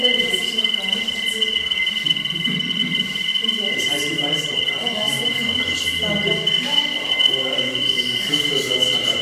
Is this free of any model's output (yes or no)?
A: yes